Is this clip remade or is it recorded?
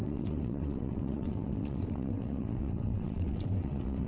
remade